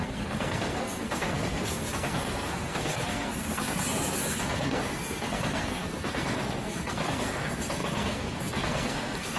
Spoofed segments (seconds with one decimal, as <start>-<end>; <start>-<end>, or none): 0.0-9.4